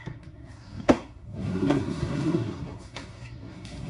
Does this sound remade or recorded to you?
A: remade